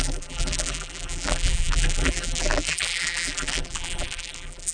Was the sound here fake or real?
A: fake